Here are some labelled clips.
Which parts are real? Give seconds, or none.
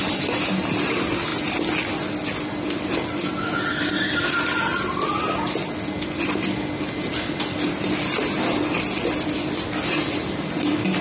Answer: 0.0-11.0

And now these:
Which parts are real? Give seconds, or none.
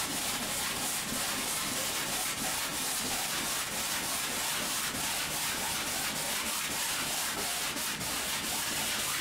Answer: 0.0-9.2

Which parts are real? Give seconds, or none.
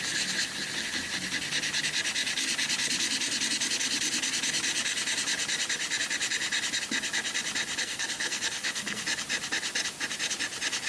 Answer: 0.0-7.8; 9.0-10.9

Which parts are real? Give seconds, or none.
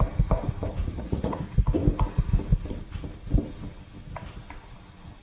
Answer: 0.0-0.8; 1.4-5.2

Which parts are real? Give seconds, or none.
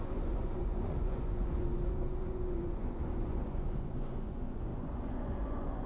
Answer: none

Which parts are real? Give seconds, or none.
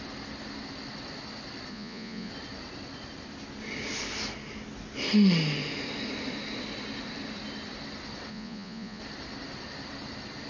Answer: 0.0-1.7; 2.3-8.3; 9.0-10.5